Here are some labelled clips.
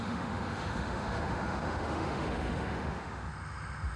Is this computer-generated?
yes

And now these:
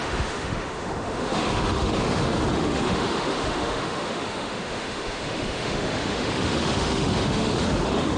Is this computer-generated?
yes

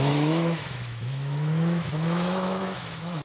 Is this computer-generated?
yes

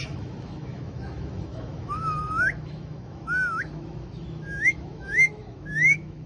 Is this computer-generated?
yes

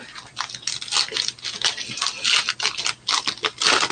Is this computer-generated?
no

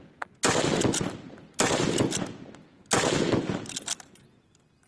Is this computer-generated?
no